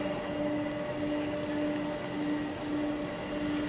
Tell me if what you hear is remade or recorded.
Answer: recorded